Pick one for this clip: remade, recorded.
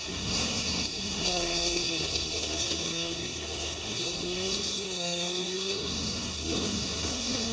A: remade